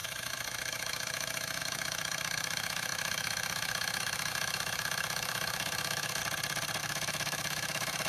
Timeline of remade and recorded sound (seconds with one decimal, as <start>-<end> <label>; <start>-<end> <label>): 0.0-6.2 remade; 6.2-6.8 recorded; 6.8-8.1 remade